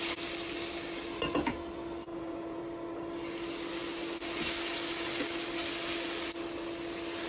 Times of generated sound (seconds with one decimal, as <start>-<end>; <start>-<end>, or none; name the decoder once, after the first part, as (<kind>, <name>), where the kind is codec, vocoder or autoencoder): 2.1-2.6 (vocoder, Vocos)